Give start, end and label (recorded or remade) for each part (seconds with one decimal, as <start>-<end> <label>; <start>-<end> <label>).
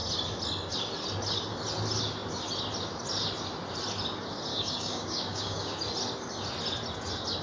0.0-4.5 recorded; 4.5-5.8 remade; 5.8-7.4 recorded